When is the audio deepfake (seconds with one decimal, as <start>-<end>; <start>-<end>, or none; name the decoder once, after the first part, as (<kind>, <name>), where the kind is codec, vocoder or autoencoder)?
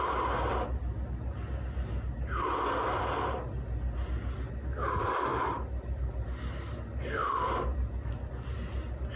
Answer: none